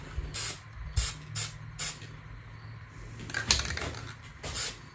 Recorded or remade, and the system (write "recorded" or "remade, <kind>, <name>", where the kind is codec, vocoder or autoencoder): recorded